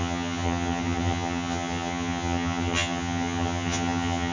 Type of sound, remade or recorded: remade